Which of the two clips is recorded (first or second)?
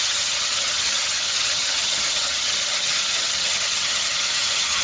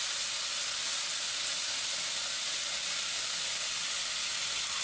second